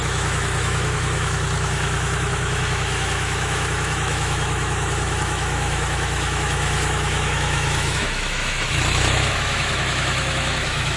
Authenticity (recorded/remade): remade